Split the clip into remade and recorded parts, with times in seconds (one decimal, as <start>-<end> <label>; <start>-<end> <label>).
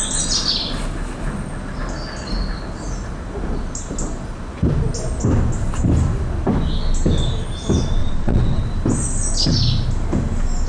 0.0-8.0 recorded; 8.0-8.6 remade; 8.6-10.7 recorded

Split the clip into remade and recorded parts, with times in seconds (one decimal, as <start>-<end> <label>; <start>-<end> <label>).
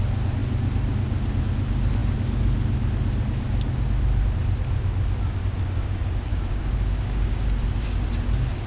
0.0-6.3 recorded; 6.3-7.4 remade; 7.4-8.7 recorded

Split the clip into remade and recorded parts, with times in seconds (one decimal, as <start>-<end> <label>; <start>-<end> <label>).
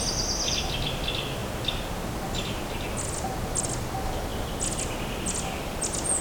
0.0-6.2 recorded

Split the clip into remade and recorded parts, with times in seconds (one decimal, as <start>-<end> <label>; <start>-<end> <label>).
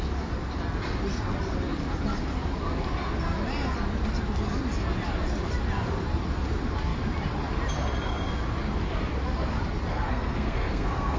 0.0-9.9 recorded; 9.9-11.2 remade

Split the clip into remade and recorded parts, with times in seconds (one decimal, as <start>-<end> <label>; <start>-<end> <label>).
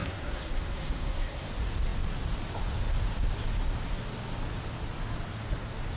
0.0-1.5 remade; 1.5-6.0 recorded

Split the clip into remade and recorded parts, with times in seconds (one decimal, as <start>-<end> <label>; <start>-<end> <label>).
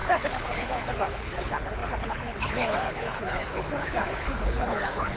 0.0-5.2 remade